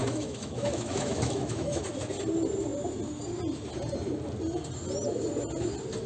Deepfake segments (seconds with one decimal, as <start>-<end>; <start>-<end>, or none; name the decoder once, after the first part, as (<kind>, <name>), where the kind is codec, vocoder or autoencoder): 0.0-1.8 (autoencoder, DAC-VAE)